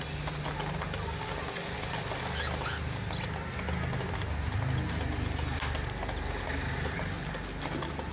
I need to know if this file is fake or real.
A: real